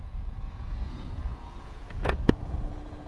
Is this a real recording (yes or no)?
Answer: no